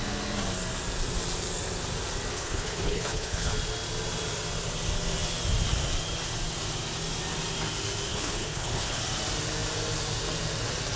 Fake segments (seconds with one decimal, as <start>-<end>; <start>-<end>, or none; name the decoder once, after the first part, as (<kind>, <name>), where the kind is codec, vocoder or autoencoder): 2.3-3.5 (codec, HILCodec); 8.1-9.0